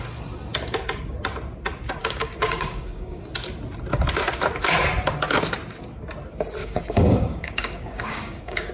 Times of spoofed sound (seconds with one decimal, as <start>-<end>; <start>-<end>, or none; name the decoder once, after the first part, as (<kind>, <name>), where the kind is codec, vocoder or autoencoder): 2.0-3.2 (codec, DAC); 6.6-8.7